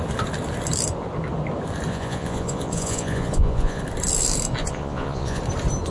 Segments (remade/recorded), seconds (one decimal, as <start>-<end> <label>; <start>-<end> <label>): 0.0-1.9 recorded; 1.9-3.8 remade; 3.8-4.6 recorded; 4.6-5.4 remade; 5.4-5.9 recorded